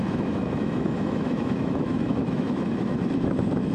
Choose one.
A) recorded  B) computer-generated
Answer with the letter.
B